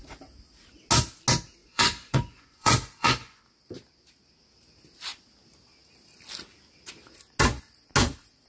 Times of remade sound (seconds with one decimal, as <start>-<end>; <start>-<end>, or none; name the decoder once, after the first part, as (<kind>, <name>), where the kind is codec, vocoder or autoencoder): 1.6-3.4 (vocoder, Vocos)